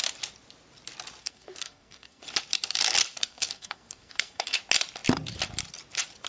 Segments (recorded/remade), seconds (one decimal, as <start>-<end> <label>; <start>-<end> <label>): 0.0-1.2 recorded; 1.2-2.2 remade; 2.2-3.2 recorded; 3.2-4.6 remade; 4.6-6.3 recorded